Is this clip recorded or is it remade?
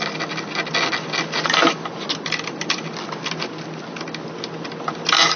recorded